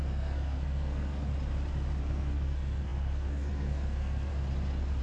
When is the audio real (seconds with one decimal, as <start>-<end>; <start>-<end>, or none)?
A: 1.3-2.0; 4.3-5.0

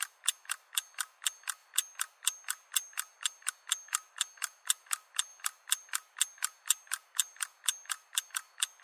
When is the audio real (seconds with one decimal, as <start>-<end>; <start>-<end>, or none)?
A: 0.0-8.8

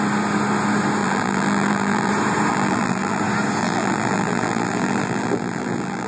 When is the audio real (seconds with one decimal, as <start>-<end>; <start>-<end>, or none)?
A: 0.0-1.0; 2.1-2.5; 3.2-3.6

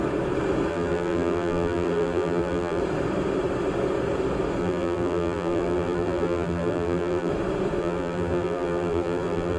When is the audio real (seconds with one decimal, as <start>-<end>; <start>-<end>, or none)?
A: 0.0-0.7; 2.8-4.6; 7.3-7.8